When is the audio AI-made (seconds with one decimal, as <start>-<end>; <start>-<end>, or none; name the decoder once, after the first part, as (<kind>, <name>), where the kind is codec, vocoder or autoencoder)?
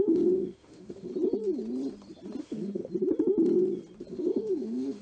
0.0-1.1 (autoencoder, DAC-VAE); 2.4-2.8; 4.1-5.0